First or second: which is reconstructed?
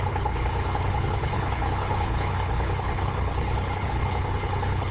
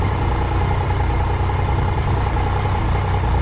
first